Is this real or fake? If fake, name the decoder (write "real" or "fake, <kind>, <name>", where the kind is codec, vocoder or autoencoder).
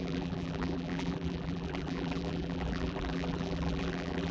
fake, vocoder, BigVGAN v2